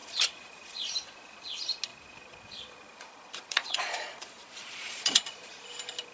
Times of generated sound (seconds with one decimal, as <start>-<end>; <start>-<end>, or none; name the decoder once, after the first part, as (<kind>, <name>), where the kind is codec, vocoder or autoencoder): 0.0-1.4 (vocoder, Vocos); 1.9-5.6